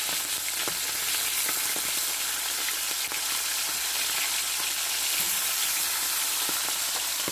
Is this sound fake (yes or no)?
no